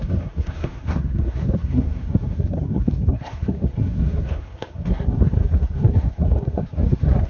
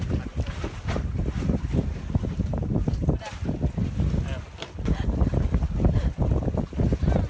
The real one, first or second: second